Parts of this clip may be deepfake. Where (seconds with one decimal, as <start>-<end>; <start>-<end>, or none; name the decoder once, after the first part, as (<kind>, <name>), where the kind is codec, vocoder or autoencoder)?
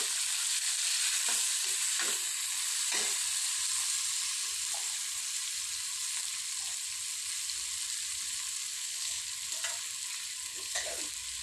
8.7-9.2 (codec, HILCodec); 10.5-11.0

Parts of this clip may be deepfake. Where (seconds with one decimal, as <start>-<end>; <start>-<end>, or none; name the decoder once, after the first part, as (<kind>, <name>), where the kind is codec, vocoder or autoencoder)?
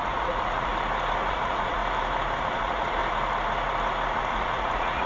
0.0-0.7 (vocoder, Vocos); 1.3-1.8; 2.4-3.0; 4.1-5.1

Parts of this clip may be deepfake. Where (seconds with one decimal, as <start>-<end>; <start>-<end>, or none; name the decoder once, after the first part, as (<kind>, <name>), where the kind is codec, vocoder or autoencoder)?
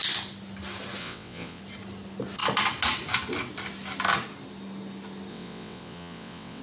1.0-1.6 (vocoder, WaveNeXt); 5.3-6.6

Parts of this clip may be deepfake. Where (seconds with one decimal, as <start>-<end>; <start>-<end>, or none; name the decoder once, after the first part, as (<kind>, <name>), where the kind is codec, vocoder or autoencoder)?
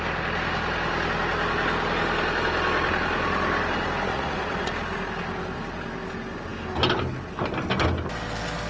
4.1-4.7 (vocoder, Vocos)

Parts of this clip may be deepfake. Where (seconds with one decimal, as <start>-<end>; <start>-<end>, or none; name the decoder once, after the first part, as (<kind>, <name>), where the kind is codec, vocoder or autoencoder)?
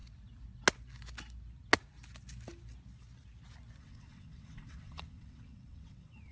3.8-6.3 (vocoder, WaveNeXt)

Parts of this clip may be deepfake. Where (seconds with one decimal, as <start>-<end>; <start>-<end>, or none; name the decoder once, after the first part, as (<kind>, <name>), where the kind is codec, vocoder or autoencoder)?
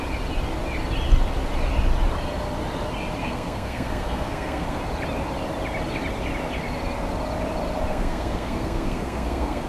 3.2-4.8 (codec, SNAC); 7.9-9.7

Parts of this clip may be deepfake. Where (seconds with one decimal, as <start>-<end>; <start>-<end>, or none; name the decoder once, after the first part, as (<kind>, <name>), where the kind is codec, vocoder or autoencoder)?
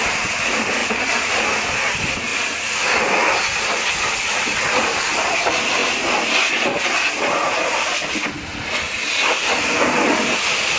0.8-1.4 (vocoder, BigVGAN v2); 5.8-6.5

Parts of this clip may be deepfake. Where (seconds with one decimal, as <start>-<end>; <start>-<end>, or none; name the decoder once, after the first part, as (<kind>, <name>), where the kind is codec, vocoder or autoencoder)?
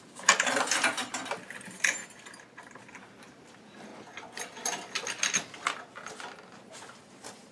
0.0-2.0 (vocoder, BigVGAN v2); 2.9-3.9; 7.0-7.5